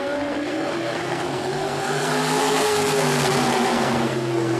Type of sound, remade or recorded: remade